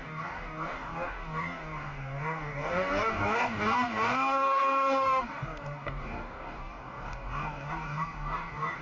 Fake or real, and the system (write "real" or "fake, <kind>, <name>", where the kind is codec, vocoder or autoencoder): fake, codec, DAC